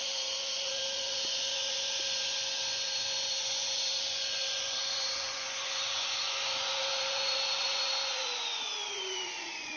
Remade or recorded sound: remade